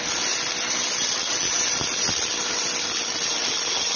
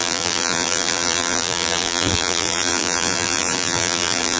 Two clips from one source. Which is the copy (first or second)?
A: second